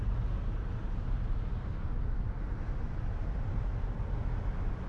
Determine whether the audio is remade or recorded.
recorded